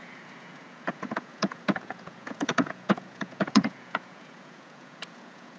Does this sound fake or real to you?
fake